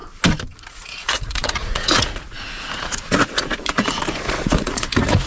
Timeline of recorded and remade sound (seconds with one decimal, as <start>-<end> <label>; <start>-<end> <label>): 0.0-0.7 recorded; 0.7-5.3 remade